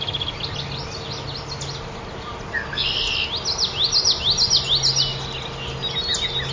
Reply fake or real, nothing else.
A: real